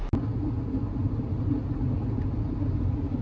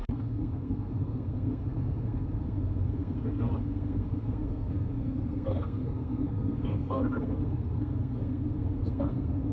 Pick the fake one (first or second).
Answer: second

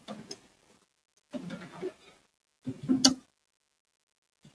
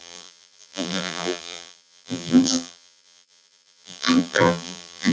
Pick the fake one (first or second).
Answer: second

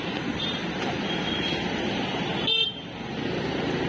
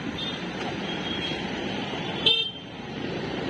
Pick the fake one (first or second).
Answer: second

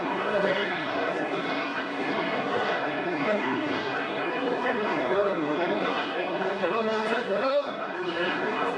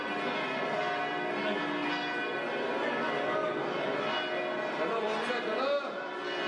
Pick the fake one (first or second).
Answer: first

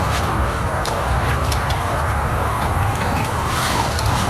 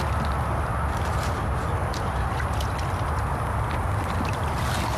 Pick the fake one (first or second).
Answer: first